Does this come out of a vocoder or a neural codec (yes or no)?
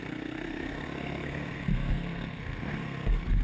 yes